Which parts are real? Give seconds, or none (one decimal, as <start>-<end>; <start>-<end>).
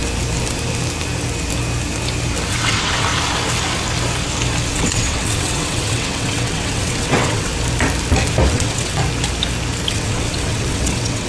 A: 0.0-2.5; 3.1-4.7; 7.5-8.5; 9.0-9.9